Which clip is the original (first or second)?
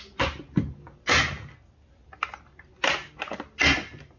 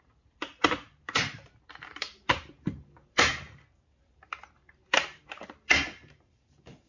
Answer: first